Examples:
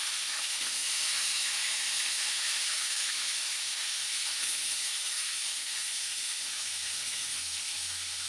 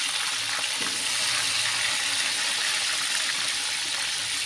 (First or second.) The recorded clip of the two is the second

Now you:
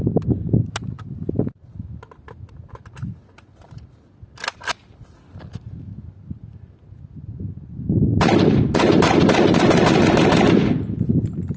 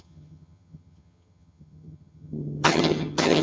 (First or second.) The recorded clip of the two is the first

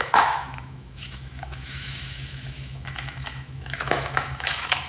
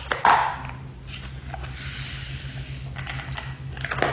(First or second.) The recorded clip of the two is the second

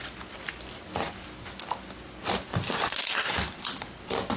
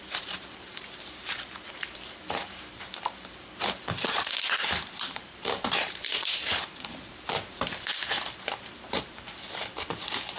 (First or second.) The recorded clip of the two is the first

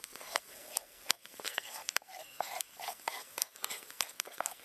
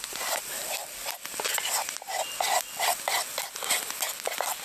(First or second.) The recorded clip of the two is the second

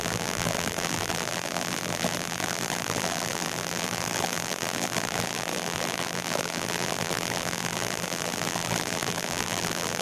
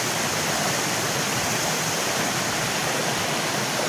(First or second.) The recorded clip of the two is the second